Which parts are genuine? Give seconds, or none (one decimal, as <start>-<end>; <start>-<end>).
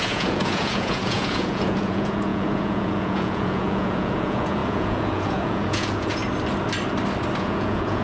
6.2-7.4